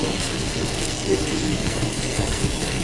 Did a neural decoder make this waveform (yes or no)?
yes